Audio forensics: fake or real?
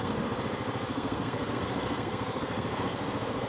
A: fake